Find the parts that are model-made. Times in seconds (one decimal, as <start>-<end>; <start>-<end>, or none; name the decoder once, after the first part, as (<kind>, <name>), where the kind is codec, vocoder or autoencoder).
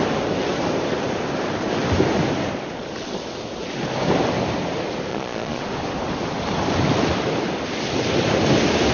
5.1-5.6 (vocoder, Vocos)